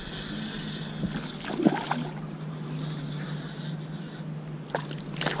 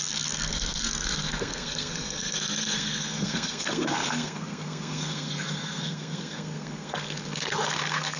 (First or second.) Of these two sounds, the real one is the first